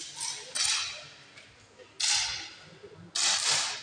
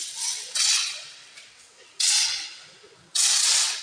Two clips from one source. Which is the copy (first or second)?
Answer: second